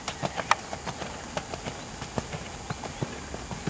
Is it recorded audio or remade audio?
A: recorded